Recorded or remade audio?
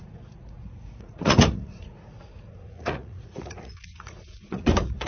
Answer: remade